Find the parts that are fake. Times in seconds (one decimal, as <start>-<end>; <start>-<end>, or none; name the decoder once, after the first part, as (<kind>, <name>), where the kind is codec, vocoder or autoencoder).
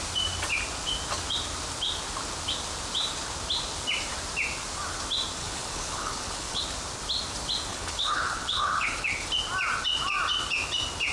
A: 5.4-6.6 (codec, HILCodec); 7.7-9.3